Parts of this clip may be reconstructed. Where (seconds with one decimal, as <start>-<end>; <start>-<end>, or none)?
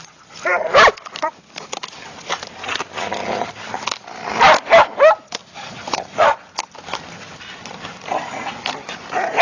5.4-6.5